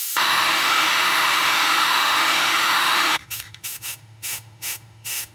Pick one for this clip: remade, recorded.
remade